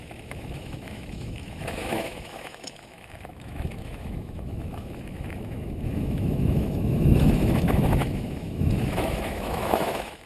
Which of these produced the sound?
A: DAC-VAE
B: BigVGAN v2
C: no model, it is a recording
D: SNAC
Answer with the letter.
A